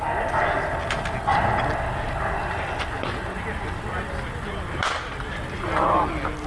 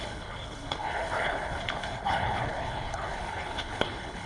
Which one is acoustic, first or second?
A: first